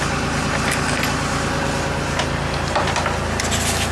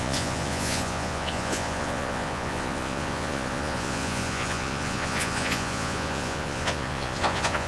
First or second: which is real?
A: first